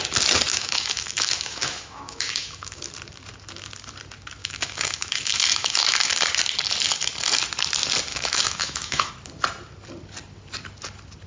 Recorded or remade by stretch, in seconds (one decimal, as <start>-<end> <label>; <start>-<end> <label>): 0.0-0.5 recorded; 0.5-2.8 remade; 2.8-4.4 recorded; 4.4-6.1 remade; 6.1-8.1 recorded; 8.1-9.1 remade; 9.1-11.3 recorded